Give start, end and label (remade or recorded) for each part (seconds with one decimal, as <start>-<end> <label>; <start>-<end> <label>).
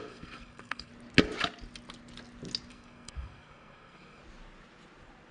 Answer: 0.0-0.9 remade; 0.9-2.7 recorded; 2.7-4.2 remade; 4.2-5.3 recorded